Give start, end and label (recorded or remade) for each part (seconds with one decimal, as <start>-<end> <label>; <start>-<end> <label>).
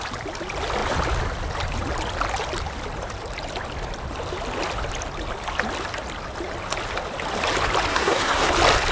0.0-7.9 recorded; 7.9-8.5 remade; 8.5-8.9 recorded